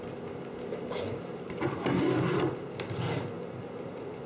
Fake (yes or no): no